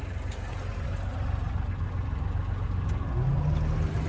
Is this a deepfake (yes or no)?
no